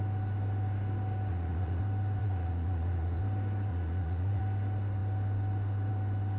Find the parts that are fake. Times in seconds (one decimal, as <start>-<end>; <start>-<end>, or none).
1.3-1.8; 2.2-3.2; 3.7-4.4